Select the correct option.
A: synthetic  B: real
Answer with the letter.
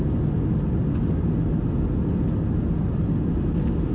B